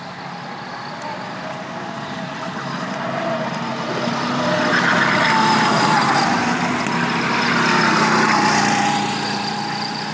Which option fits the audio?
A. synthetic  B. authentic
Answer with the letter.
B